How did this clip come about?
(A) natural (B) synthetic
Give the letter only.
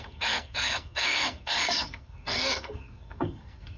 B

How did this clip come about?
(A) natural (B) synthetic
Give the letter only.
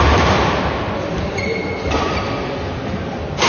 A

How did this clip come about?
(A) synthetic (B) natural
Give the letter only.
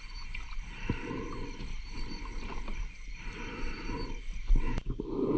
B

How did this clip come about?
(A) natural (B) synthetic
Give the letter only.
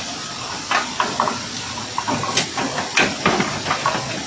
A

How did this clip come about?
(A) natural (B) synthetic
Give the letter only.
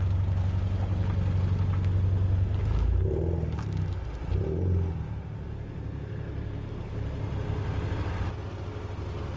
A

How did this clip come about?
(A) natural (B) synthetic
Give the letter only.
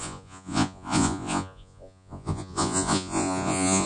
B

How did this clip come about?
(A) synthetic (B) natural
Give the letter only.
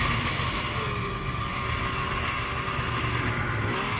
B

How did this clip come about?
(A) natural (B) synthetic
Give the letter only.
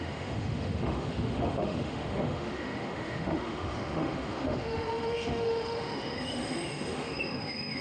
B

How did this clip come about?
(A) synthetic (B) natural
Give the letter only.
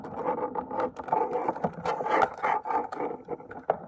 B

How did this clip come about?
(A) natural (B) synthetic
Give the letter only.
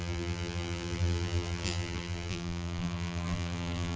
B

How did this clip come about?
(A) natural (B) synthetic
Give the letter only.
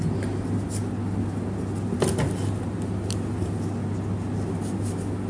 A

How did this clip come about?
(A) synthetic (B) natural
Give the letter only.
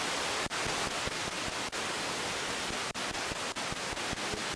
B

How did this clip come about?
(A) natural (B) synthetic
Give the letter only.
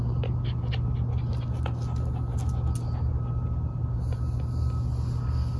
A